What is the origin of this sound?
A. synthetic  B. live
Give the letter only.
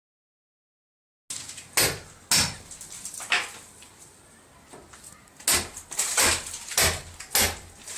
B